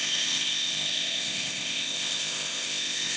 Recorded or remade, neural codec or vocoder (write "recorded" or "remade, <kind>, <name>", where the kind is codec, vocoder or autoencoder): remade, codec, ZipCodec